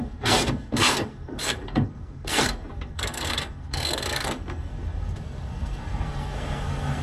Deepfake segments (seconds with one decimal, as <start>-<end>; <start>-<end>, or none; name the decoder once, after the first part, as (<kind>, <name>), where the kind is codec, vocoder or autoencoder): 0.0-7.0 (codec, SNAC)